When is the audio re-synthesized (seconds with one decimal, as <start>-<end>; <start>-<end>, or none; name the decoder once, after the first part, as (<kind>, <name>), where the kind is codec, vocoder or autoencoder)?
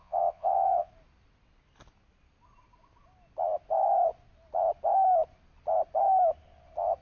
0.0-0.9 (vocoder, WaveNeXt)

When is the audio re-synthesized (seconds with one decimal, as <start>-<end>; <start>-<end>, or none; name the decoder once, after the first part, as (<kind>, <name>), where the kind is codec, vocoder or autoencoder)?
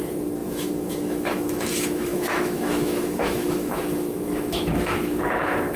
0.0-5.8 (autoencoder, DAC-VAE)